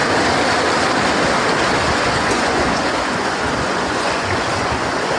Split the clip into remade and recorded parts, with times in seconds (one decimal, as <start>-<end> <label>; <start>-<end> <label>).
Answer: 0.0-1.8 recorded; 1.8-5.2 remade

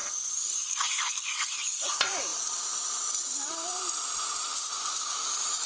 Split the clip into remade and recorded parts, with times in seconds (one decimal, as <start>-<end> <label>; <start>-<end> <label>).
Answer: 0.0-5.7 remade